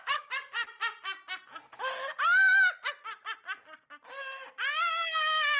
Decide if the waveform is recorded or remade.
recorded